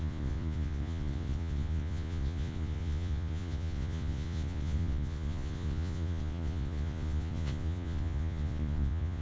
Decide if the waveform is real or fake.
fake